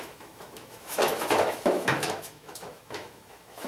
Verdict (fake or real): fake